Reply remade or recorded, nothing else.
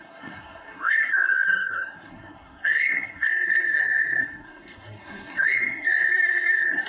remade